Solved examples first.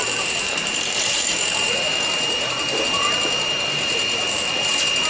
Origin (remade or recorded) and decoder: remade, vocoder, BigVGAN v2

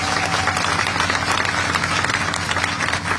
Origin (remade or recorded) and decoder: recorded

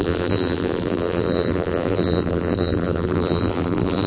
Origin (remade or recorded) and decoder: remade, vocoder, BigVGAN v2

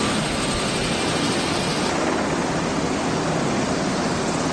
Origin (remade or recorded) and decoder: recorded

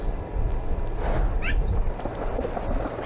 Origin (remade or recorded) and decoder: recorded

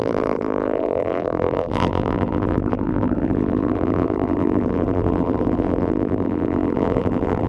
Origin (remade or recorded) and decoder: remade, vocoder, BigVGAN v2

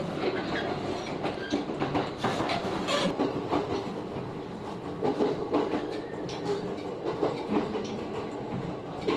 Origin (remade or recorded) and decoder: recorded